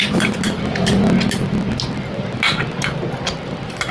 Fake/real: real